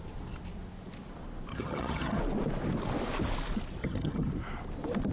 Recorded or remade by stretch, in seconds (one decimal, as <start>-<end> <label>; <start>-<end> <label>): 0.0-1.5 recorded; 1.5-2.2 remade; 2.2-3.8 recorded; 3.8-4.3 remade; 4.3-5.1 recorded